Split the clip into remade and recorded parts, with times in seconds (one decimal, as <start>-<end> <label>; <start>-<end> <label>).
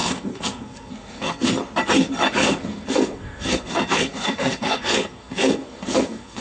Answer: 0.0-1.5 remade; 1.5-2.4 recorded; 2.4-6.4 remade